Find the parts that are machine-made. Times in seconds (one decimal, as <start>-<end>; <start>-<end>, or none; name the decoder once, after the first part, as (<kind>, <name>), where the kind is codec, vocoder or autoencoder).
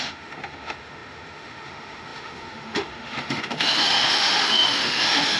0.0-5.4 (autoencoder, DAC-VAE)